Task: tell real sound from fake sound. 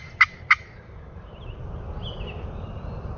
real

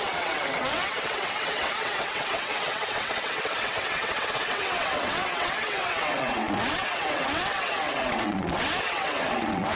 fake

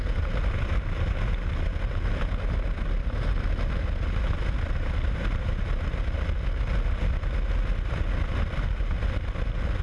real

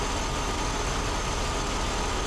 real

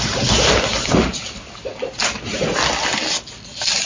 real